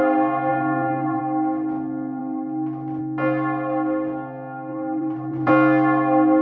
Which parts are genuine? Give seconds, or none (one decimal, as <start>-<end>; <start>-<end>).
0.0-0.5; 1.2-4.7; 5.5-6.4